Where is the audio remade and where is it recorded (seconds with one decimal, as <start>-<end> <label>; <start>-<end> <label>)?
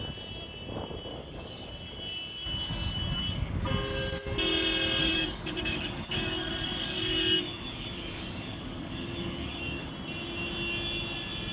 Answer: 0.0-1.1 recorded; 1.1-3.6 remade; 3.6-5.0 recorded; 5.0-9.9 remade; 9.9-11.5 recorded